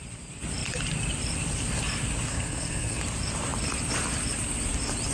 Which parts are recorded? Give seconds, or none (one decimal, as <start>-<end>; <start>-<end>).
0.0-2.3; 3.0-5.1